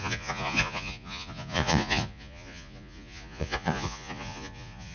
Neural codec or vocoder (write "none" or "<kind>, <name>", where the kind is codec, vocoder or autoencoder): vocoder, Vocos